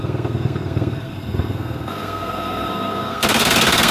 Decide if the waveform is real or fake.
fake